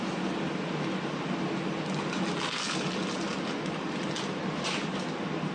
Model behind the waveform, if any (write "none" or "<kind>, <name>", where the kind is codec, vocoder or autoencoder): none